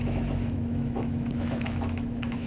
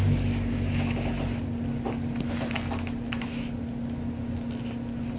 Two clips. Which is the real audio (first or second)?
second